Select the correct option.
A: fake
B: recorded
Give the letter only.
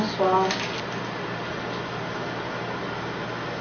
B